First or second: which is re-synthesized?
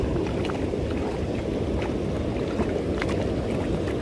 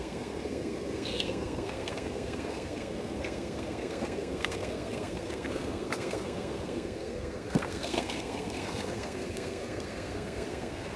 second